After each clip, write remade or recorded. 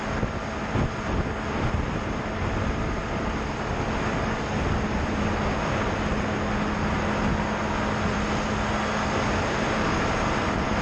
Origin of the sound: recorded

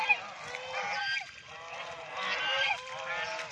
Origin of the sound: recorded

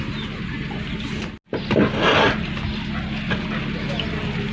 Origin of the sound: recorded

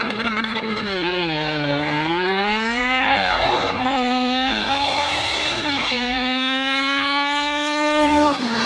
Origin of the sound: remade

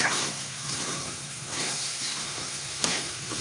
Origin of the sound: remade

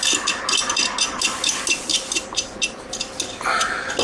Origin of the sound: recorded